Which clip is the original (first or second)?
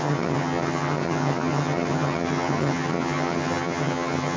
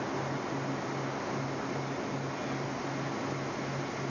second